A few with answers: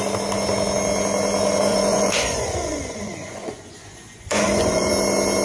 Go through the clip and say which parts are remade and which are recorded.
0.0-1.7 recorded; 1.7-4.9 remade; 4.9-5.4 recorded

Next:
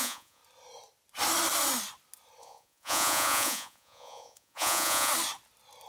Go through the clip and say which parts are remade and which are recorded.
0.0-0.4 remade; 0.4-2.4 recorded; 2.4-5.1 remade; 5.1-5.9 recorded

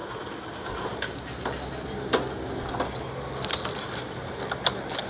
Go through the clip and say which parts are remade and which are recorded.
0.0-5.1 recorded

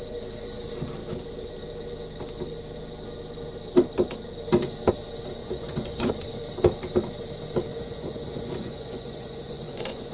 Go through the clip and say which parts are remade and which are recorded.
0.0-5.4 recorded; 5.4-6.1 remade; 6.1-7.7 recorded; 7.7-10.1 remade

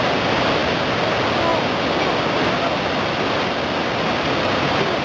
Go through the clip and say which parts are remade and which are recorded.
0.0-5.0 recorded

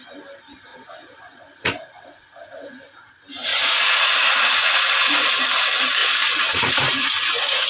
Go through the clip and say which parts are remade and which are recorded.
0.0-0.7 recorded; 0.7-3.1 remade; 3.1-3.5 recorded; 3.5-5.4 remade; 5.4-6.0 recorded; 6.0-7.7 remade